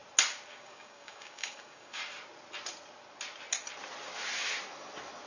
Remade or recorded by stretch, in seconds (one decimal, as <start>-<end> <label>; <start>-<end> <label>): 0.0-0.5 recorded; 0.5-2.0 remade; 2.0-5.3 recorded